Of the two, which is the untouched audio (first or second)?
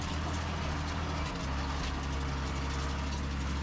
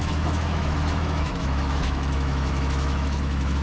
first